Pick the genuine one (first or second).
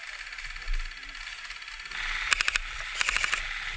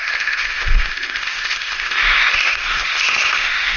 first